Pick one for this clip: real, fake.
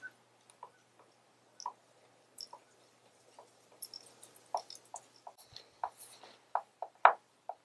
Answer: real